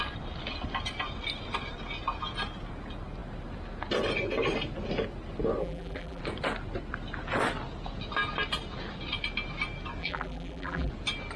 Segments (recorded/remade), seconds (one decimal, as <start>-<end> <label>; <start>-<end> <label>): 0.0-5.6 recorded; 5.6-6.2 remade; 6.2-10.0 recorded; 10.0-10.9 remade; 10.9-11.4 recorded